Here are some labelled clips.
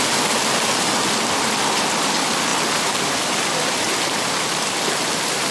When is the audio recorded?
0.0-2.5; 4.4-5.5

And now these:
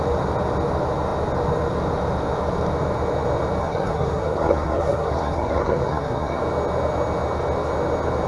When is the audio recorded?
0.0-3.6; 6.4-8.3

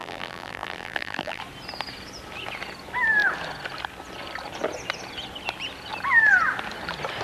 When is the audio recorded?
1.4-7.2

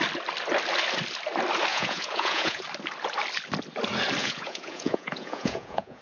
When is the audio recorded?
0.0-1.7; 2.6-4.2

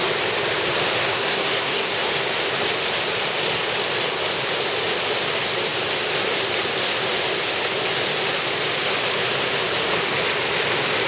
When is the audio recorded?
0.0-1.0; 1.9-11.1